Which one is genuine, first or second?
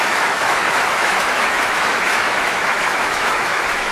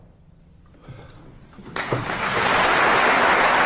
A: second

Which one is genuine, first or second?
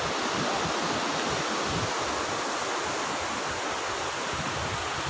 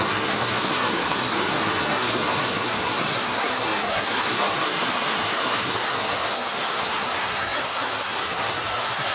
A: first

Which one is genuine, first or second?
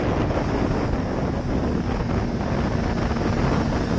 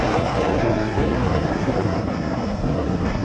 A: first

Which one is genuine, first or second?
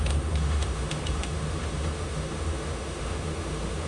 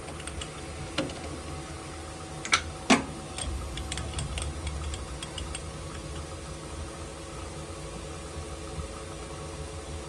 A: second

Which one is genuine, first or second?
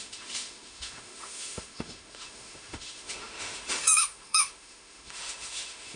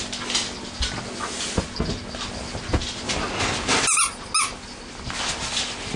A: second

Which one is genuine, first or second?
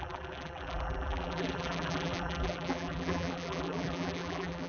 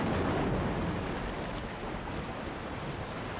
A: second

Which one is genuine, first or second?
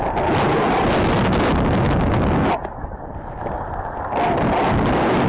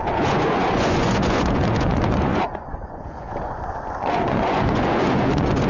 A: first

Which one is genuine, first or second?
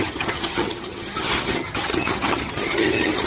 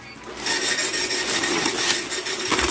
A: second